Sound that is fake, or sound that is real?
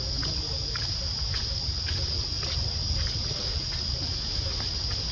real